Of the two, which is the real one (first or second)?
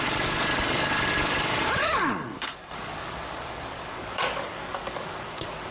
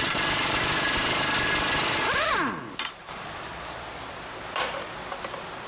second